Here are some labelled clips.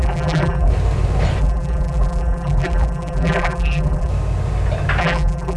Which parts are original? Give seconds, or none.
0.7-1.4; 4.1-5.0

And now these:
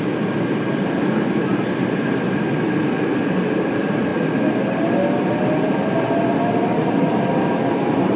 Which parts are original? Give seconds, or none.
0.0-8.2